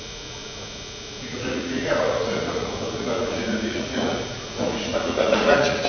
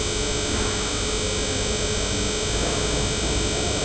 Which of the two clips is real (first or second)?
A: second